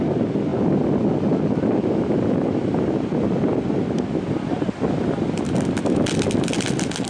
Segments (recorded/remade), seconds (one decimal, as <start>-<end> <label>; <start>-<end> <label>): 0.0-7.1 recorded